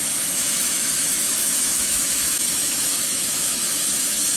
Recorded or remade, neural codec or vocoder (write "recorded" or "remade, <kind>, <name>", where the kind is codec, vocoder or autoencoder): remade, autoencoder, DAC-VAE